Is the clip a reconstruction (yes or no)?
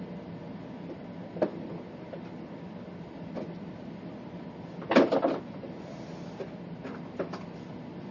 no